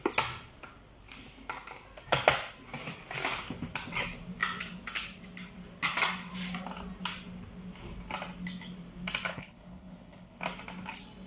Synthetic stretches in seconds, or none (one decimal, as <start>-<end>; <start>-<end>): 9.3-10.4